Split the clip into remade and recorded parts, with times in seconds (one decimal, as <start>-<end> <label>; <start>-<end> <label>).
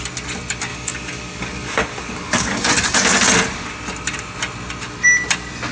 0.0-0.7 recorded; 0.7-2.7 remade; 2.7-5.7 recorded